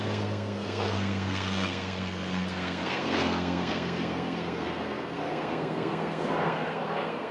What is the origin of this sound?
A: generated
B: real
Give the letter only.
A